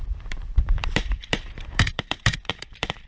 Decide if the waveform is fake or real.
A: fake